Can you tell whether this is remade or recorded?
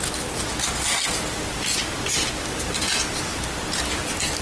recorded